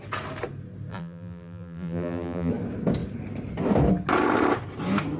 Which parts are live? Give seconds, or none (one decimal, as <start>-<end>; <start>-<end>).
0.0-0.9; 2.5-5.2